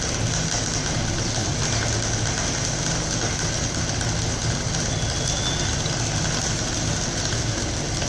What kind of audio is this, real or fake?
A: real